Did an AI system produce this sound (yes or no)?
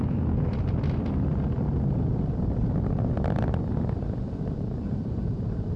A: no